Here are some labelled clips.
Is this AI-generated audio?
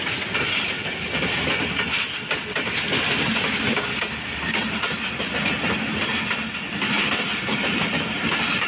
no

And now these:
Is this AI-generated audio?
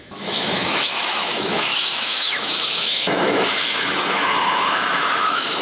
yes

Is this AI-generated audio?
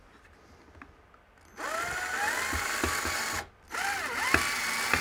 no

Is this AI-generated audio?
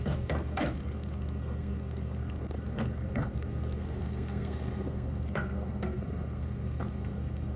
yes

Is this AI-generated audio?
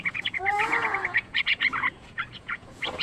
yes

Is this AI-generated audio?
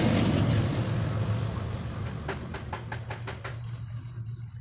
no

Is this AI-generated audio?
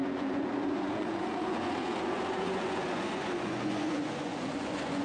yes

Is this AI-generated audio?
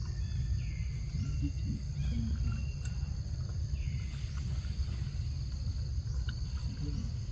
no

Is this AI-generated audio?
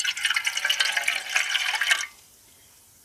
no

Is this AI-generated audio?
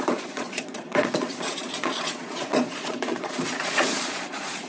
yes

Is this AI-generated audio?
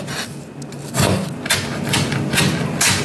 no